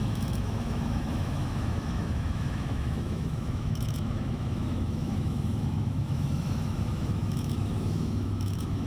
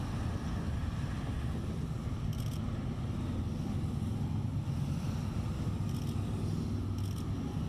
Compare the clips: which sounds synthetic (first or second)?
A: first